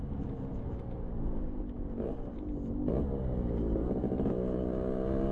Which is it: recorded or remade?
recorded